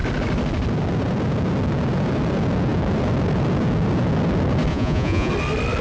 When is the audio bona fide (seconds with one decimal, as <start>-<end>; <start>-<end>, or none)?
0.0-4.7; 5.3-5.8